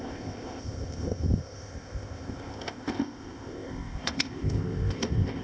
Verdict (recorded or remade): remade